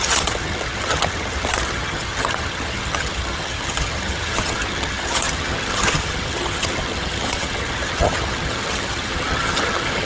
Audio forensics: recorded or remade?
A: remade